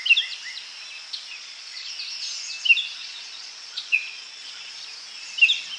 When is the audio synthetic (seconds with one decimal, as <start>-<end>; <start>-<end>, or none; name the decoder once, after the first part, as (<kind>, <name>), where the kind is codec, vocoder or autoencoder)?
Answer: 1.3-1.9 (vocoder, Vocos); 3.0-4.7